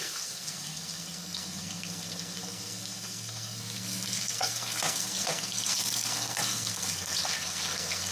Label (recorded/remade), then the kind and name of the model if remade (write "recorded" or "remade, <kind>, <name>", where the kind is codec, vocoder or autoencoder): remade, codec, SNAC